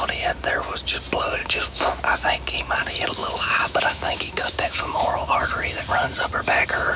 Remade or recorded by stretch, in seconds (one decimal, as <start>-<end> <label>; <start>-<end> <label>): 0.0-1.4 recorded; 1.4-2.0 remade; 2.0-3.2 recorded; 3.2-5.4 remade; 5.4-7.0 recorded